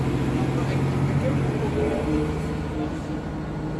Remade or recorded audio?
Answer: recorded